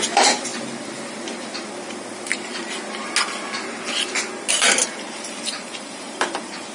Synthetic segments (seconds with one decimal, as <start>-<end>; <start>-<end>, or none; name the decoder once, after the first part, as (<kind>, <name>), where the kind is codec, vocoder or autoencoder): 0.0-0.5 (vocoder, BigVGAN v2); 4.5-6.7